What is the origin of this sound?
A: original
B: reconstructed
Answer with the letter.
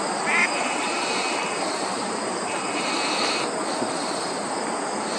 A